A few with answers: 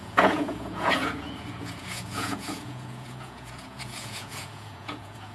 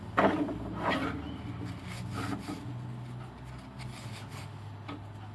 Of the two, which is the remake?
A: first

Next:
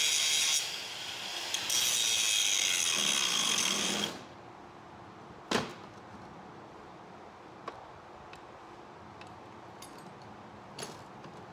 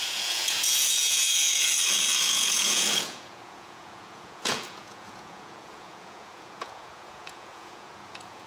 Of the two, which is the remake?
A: second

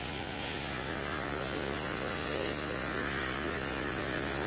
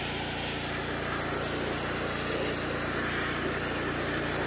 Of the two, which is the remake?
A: first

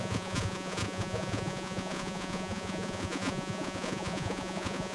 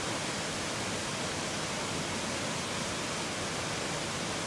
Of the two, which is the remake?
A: first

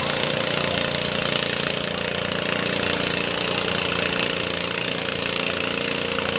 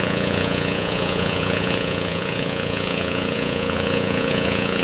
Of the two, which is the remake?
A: second